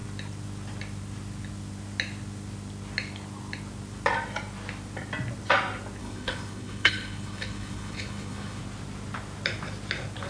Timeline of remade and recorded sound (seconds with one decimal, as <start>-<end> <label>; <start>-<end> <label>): 0.0-6.0 recorded; 6.0-8.6 remade; 8.6-10.3 recorded